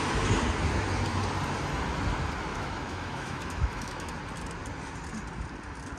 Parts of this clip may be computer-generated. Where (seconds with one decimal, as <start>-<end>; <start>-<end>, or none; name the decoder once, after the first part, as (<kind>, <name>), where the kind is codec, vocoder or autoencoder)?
2.5-4.1 (autoencoder, DAC-VAE)